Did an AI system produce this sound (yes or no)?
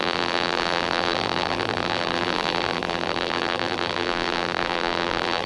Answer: yes